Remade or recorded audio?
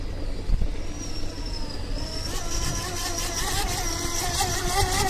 recorded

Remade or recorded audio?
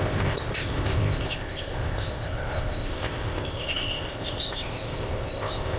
remade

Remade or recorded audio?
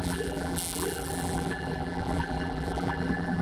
remade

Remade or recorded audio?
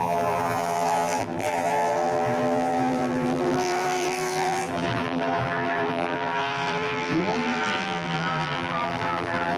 remade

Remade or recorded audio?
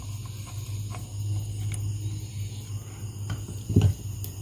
recorded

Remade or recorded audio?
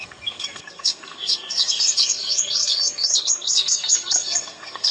remade